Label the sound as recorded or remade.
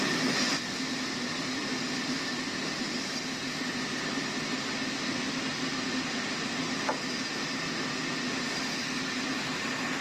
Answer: recorded